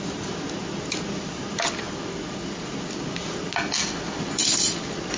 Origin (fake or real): real